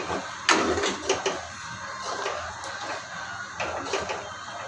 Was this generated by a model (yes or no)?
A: no